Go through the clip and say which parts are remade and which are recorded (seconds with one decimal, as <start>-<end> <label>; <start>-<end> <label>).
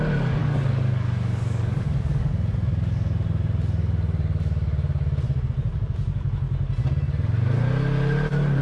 0.0-0.4 recorded; 0.4-2.3 remade; 2.3-5.7 recorded; 5.7-6.3 remade; 6.3-8.6 recorded